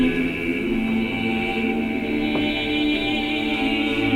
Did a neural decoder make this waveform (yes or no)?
no